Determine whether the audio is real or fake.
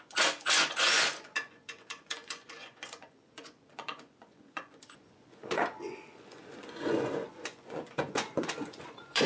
fake